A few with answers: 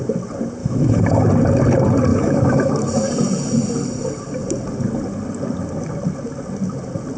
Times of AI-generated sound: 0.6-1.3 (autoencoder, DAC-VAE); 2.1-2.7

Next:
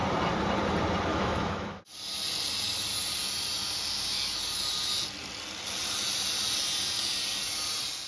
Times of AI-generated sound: 1.1-1.8 (autoencoder, DAC-VAE)

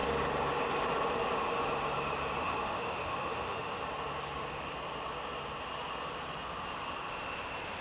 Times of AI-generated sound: 2.4-3.8 (autoencoder, DAC-VAE)